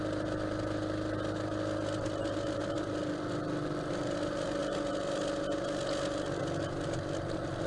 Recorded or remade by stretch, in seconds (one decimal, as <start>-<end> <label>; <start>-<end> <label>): 0.0-7.7 recorded